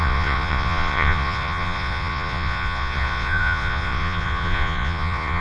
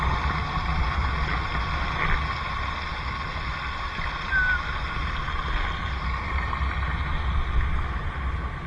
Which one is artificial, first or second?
first